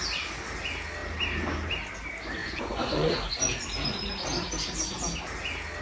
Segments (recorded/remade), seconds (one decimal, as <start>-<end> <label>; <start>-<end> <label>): 0.0-2.4 recorded; 2.4-3.3 remade; 3.3-5.8 recorded

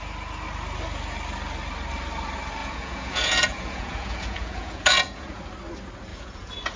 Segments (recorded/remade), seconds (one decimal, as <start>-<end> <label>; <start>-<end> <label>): 0.0-2.6 recorded; 2.6-5.4 remade; 5.4-6.1 recorded; 6.1-6.8 remade

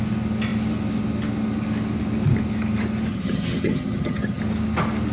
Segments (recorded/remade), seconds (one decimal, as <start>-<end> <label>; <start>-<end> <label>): 0.0-3.1 recorded; 3.1-4.4 remade; 4.4-5.1 recorded

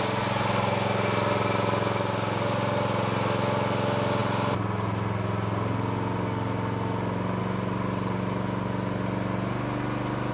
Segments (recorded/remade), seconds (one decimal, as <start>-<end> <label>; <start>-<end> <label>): 0.0-10.3 recorded

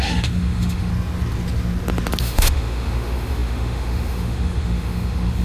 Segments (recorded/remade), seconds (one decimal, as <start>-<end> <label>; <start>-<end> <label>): 0.0-0.9 remade; 0.9-2.2 recorded; 2.2-5.4 remade